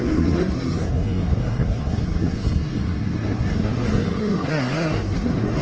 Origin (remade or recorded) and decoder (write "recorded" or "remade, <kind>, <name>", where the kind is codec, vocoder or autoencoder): remade, codec, SNAC